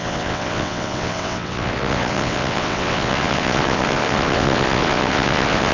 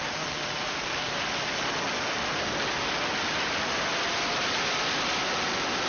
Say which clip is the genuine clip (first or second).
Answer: second